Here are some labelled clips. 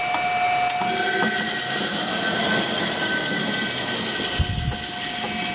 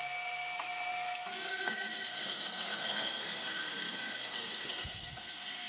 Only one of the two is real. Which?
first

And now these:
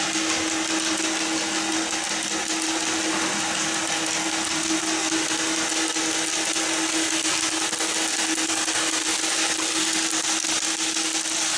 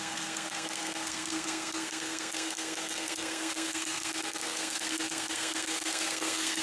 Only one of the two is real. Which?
first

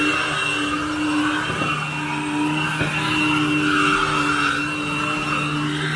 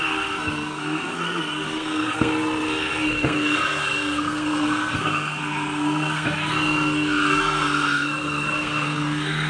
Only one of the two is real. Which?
first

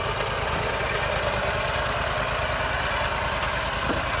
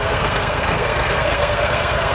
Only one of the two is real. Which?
first